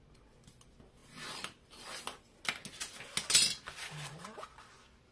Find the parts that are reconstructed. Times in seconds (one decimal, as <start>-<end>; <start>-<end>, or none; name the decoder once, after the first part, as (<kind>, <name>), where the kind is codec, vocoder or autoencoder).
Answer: none